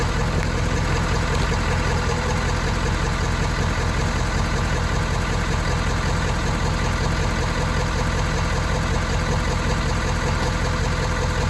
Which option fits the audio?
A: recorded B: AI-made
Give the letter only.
A